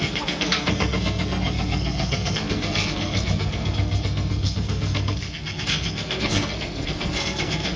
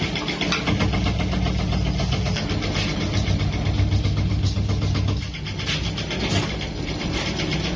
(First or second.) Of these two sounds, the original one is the second